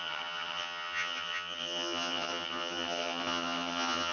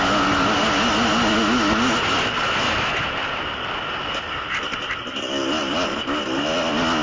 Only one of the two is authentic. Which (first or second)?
second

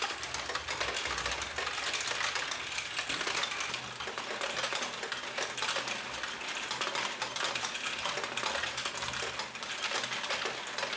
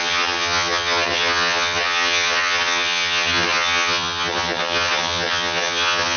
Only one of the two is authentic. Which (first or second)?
first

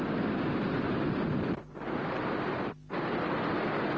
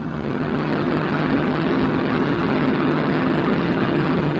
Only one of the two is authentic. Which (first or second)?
first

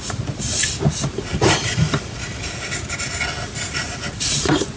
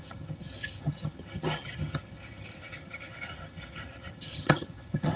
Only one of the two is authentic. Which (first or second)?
first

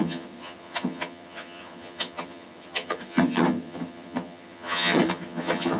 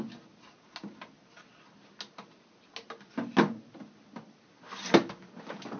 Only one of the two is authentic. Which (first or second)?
second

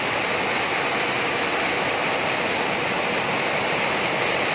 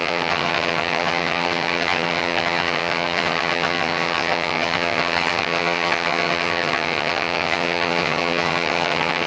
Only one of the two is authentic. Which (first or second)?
first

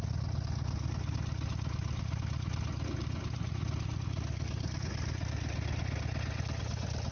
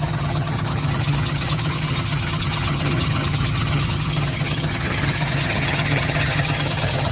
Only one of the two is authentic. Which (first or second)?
first